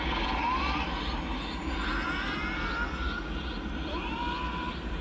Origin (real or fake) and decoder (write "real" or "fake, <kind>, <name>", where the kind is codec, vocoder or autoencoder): real